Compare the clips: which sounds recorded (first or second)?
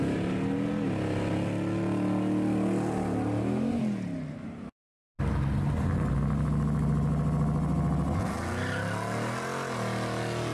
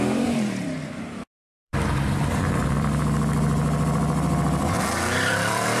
first